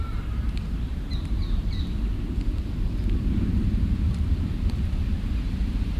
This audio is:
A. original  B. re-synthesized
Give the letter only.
B